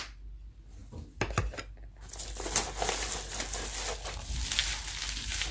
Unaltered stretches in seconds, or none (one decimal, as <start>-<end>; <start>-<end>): 0.0-5.5